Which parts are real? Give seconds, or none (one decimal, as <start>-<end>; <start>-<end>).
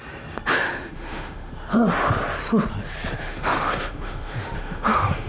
0.0-0.5; 1.5-3.2